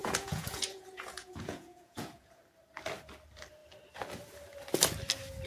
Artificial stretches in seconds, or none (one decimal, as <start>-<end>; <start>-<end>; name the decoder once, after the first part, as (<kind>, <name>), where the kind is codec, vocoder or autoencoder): 0.0-2.4 (vocoder, Vocos)